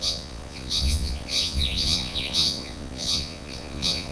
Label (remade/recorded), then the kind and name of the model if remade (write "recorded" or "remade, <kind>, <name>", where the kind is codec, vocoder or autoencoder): remade, vocoder, Vocos